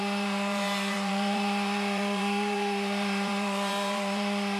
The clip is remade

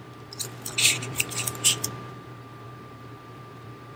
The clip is remade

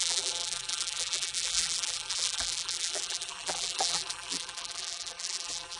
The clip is remade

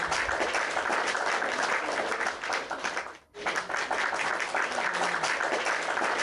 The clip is remade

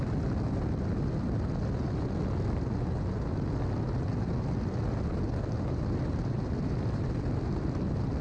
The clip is recorded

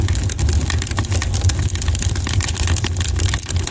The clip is recorded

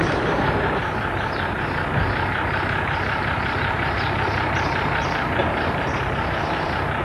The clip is remade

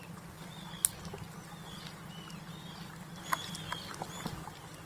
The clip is recorded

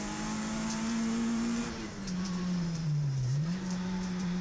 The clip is remade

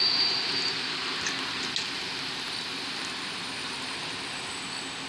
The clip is recorded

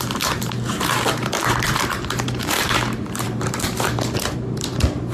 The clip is remade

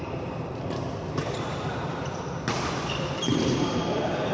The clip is remade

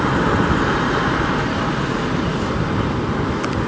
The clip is remade